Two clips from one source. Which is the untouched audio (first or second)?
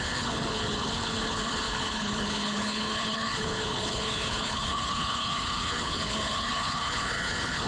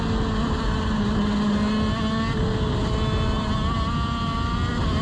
second